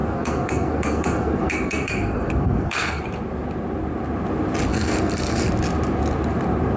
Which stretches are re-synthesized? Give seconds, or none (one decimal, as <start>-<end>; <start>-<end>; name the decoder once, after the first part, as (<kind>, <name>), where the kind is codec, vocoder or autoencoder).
0.0-3.0 (codec, SNAC); 4.7-5.5

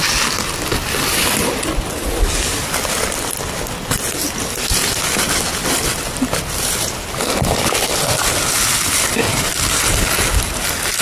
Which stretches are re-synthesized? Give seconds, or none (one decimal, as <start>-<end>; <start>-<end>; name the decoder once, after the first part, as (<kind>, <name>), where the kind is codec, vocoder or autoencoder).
none

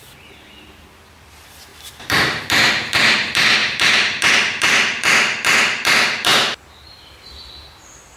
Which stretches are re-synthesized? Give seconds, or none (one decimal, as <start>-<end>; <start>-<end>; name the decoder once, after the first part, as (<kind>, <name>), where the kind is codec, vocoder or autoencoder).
0.0-6.3 (vocoder, BigVGAN v2); 7.0-8.2

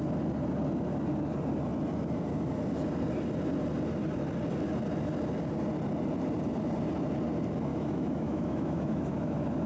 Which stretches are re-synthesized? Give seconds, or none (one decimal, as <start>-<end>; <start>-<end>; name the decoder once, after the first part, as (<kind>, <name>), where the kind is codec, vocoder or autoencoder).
7.7-9.7 (autoencoder, DAC-VAE)

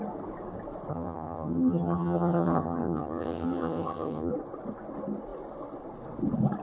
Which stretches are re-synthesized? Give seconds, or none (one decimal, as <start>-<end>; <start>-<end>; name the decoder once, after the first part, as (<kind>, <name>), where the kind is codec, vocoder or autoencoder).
0.9-4.3 (vocoder, HiFi-GAN)